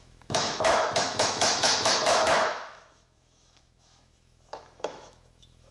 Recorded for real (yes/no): no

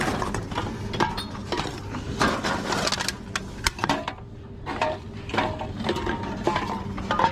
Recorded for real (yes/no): yes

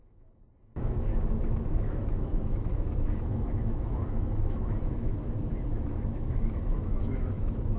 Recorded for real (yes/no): no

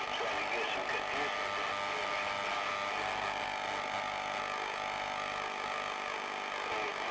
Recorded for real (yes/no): yes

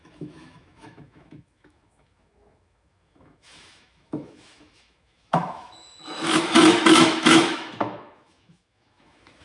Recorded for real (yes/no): no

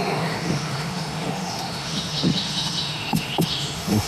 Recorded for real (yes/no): no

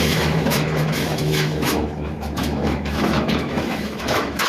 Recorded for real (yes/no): no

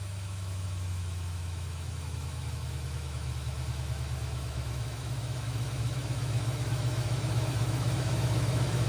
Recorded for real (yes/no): no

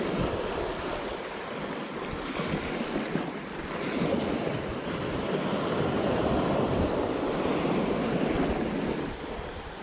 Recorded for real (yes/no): yes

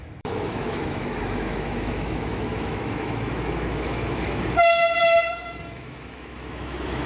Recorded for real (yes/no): no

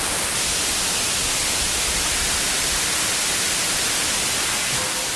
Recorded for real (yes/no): yes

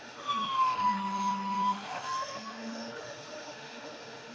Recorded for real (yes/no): no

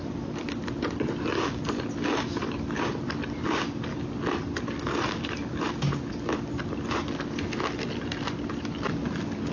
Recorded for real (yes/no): yes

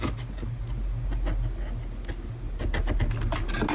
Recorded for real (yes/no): yes